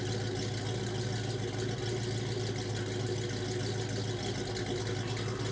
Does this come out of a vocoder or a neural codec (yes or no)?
no